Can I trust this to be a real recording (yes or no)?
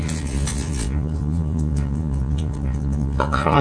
no